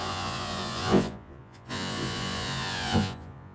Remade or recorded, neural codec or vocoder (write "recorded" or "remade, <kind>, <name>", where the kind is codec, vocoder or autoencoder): remade, vocoder, Vocos